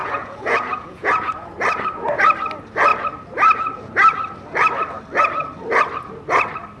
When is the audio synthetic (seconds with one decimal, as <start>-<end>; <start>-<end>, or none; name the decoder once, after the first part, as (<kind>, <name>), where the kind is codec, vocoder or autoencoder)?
0.0-1.3 (vocoder, Vocos)